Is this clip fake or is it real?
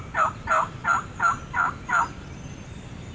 real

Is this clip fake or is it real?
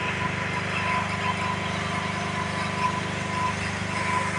real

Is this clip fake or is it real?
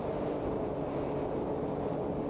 real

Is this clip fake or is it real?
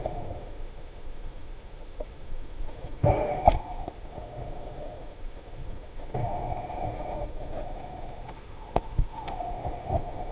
fake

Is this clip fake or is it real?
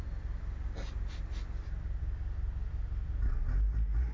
real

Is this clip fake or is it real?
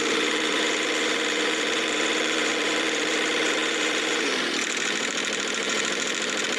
fake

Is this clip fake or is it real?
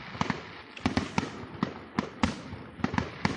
real